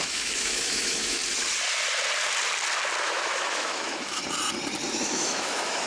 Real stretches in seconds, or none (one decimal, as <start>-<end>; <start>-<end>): 1.2-3.0; 4.2-4.9